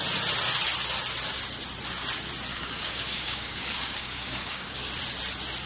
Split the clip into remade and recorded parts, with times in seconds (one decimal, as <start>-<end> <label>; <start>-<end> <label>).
0.0-2.5 recorded; 2.5-4.9 remade; 4.9-5.7 recorded